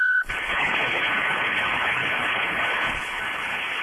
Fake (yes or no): yes